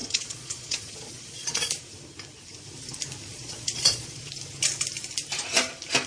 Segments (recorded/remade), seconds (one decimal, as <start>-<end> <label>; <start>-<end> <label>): 0.0-1.7 remade; 1.7-3.3 recorded; 3.3-4.3 remade; 4.3-6.1 recorded